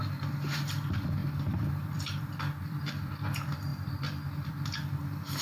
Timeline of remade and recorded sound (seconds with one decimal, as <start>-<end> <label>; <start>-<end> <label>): 0.0-1.2 recorded; 1.2-3.1 remade; 3.1-3.7 recorded; 3.7-4.5 remade; 4.5-5.4 recorded